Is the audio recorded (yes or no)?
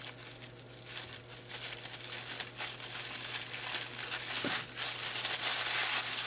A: yes